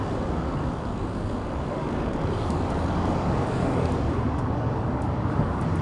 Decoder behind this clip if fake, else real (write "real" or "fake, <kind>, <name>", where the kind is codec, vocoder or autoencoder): fake, codec, DAC